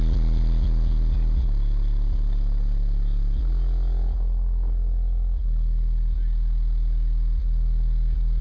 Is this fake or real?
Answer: real